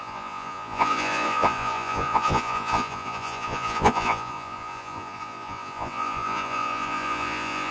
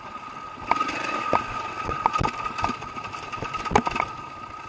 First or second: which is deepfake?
first